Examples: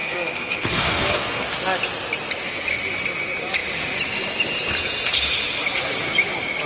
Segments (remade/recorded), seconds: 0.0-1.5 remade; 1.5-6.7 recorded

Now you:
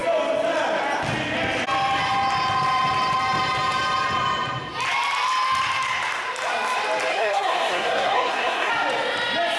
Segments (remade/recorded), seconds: 0.0-7.1 recorded; 7.1-8.7 remade; 8.7-9.6 recorded

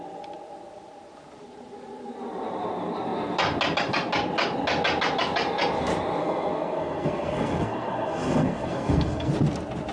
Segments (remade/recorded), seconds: 0.0-6.2 recorded; 6.2-9.3 remade; 9.3-9.9 recorded

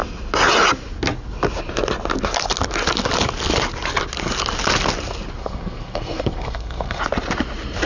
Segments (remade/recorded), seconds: 0.0-5.4 recorded; 5.4-7.0 remade; 7.0-7.9 recorded

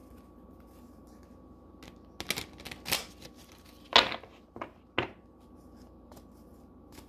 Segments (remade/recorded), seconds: 0.0-7.1 recorded

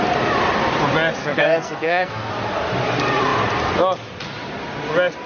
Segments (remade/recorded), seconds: 0.0-1.2 recorded; 1.2-2.3 remade; 2.3-5.3 recorded